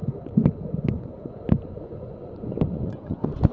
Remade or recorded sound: remade